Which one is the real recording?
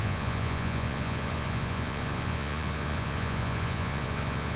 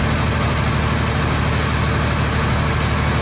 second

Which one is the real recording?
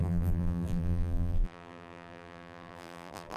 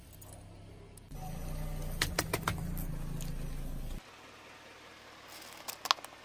second